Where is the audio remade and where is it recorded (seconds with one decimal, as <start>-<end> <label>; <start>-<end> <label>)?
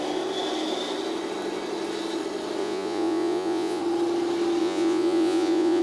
0.0-2.6 recorded; 2.6-3.8 remade; 3.8-4.6 recorded; 4.6-5.8 remade